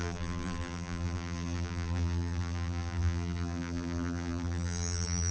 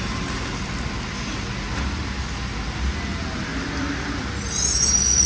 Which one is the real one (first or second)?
second